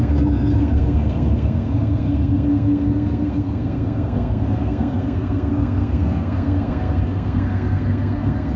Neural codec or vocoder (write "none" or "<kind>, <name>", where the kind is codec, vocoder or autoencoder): codec, SNAC